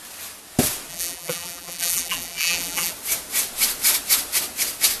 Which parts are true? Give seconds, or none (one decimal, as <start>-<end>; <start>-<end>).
0.0-0.9; 2.9-5.0